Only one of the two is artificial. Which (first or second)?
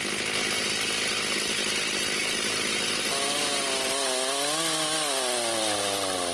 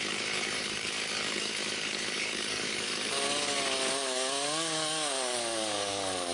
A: second